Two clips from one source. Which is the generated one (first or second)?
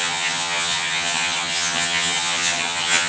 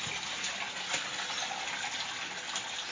first